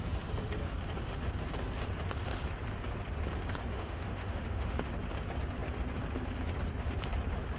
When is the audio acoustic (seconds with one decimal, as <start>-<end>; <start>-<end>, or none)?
0.0-3.7; 4.9-7.6